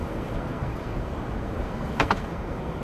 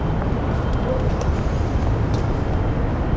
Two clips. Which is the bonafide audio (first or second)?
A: second